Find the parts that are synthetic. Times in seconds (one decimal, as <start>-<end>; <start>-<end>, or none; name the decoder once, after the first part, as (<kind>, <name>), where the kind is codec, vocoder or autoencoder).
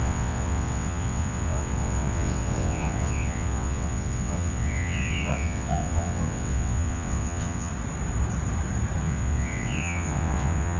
0.0-7.7 (vocoder, WaveNeXt); 9.0-10.8